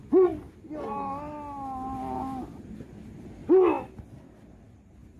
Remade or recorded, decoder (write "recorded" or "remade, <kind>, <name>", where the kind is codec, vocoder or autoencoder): recorded